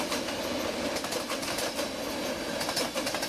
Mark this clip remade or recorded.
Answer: recorded